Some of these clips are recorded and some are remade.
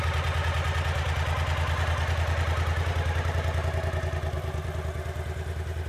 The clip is recorded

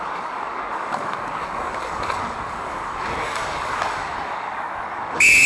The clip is remade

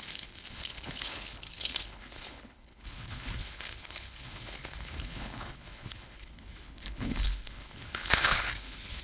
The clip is remade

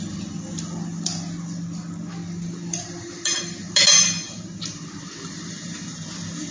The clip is recorded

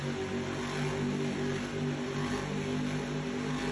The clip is recorded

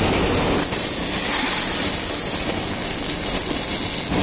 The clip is recorded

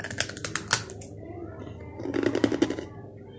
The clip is recorded